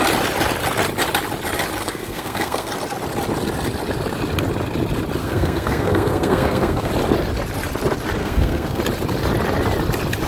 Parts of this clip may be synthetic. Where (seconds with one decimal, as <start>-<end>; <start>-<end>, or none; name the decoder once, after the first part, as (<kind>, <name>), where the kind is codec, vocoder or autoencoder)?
1.8-2.7 (codec, SNAC); 5.2-6.9; 8.2-8.8